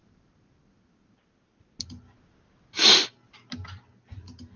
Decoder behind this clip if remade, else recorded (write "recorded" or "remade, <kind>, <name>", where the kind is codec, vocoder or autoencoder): recorded